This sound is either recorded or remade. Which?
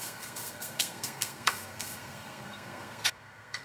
remade